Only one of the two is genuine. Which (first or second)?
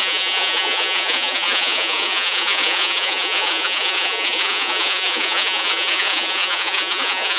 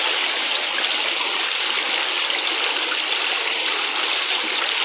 second